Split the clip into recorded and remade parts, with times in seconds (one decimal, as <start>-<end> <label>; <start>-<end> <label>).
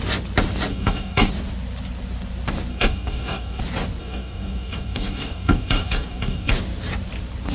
0.0-0.7 recorded; 0.7-1.3 remade; 1.3-2.7 recorded; 2.7-3.6 remade; 3.6-4.0 recorded; 4.0-6.5 remade; 6.5-7.5 recorded